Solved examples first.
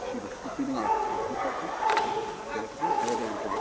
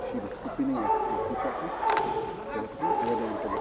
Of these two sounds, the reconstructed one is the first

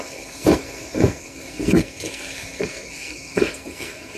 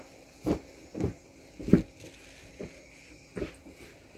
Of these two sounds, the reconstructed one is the first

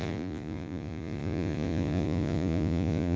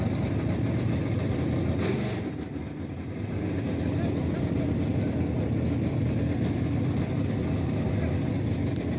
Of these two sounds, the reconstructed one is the first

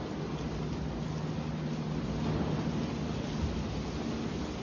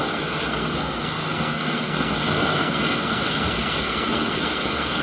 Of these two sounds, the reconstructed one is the second